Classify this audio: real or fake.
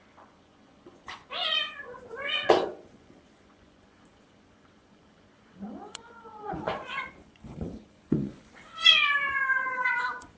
fake